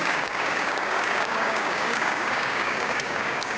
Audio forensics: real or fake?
fake